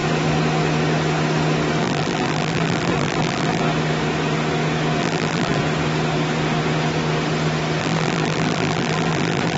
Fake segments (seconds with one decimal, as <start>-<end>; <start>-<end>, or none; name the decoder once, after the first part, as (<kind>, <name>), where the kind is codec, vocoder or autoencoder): 1.8-3.6 (vocoder, BigVGAN v2); 5.0-5.6; 7.8-9.6